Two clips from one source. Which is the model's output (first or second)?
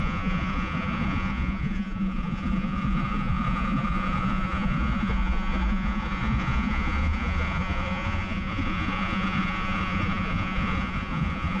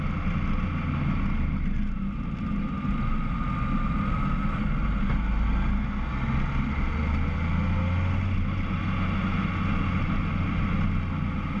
first